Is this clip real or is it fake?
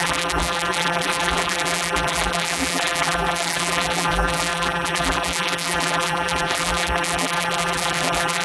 fake